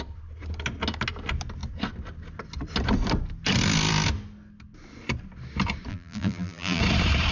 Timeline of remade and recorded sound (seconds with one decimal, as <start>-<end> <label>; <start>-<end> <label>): 0.0-5.9 recorded; 5.9-6.8 remade; 6.8-7.3 recorded